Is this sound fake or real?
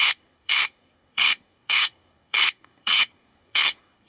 fake